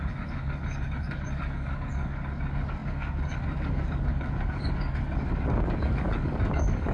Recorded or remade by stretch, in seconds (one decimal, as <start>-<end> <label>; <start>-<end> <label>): 0.0-6.9 remade